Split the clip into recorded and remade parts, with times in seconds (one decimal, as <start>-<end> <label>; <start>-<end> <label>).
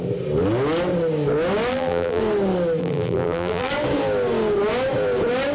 0.0-1.7 recorded; 1.7-2.2 remade; 2.2-2.8 recorded; 2.8-3.7 remade; 3.7-5.5 recorded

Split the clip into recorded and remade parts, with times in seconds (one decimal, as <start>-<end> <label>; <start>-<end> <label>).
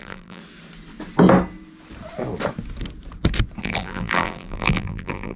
0.0-0.4 remade; 0.4-3.6 recorded; 3.6-5.4 remade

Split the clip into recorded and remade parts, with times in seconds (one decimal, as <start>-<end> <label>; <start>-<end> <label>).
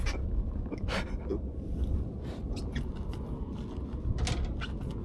0.0-1.3 recorded; 1.3-3.7 remade; 3.7-5.0 recorded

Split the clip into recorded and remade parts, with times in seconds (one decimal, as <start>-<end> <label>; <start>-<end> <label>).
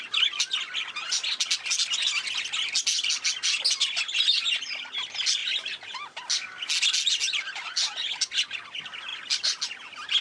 0.0-10.2 recorded